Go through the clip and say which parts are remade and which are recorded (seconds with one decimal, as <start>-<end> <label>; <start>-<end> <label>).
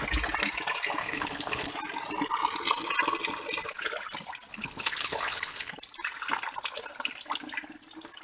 0.0-1.0 recorded; 1.0-1.7 remade; 1.7-4.5 recorded; 4.5-5.7 remade; 5.7-8.2 recorded